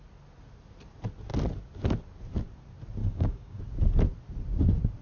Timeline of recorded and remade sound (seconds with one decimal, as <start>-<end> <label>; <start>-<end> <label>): 0.0-3.0 recorded; 3.0-3.6 remade; 3.6-5.0 recorded